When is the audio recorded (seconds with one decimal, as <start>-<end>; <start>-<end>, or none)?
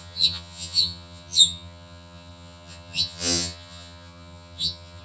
none